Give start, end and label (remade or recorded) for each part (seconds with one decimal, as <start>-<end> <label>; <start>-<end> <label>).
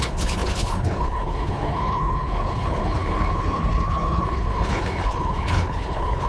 0.0-6.3 remade